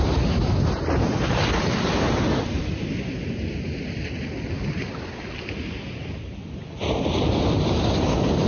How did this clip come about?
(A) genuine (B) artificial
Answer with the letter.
A